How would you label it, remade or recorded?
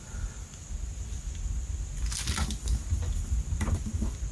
recorded